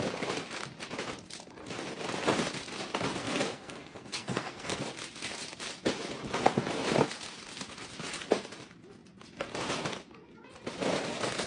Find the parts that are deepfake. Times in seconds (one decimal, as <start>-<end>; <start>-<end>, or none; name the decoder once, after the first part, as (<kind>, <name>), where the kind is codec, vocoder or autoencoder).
3.2-4.8 (codec, SNAC)

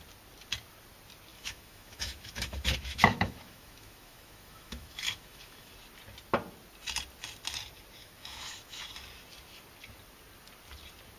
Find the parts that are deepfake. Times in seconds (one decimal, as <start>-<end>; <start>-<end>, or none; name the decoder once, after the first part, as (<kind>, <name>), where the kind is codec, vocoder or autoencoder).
1.3-5.7 (autoencoder, DAC-VAE); 8.0-8.8

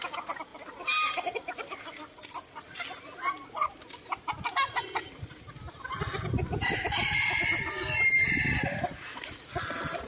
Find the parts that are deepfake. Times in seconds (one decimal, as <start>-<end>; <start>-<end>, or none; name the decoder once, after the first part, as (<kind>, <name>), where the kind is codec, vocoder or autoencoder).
none

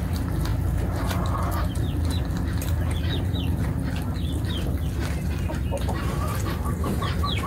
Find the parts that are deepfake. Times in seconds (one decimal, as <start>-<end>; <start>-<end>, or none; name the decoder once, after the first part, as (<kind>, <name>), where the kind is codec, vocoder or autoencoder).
none

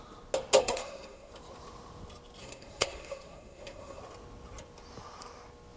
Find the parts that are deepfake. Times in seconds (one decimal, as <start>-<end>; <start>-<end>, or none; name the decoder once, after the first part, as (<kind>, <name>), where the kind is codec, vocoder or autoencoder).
0.6-1.3 (codec, SNAC); 2.4-4.0

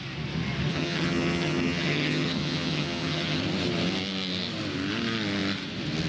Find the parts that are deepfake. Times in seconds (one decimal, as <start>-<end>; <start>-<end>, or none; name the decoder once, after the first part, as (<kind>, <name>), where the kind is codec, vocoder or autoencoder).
0.7-3.4 (vocoder, HiFi-GAN)